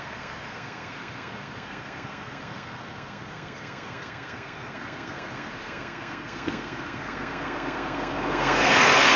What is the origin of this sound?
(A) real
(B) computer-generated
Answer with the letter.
B